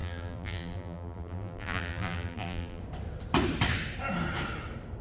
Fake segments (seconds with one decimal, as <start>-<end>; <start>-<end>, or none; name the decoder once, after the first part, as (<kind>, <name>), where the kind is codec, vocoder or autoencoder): 0.0-2.8 (vocoder, BigVGAN v2)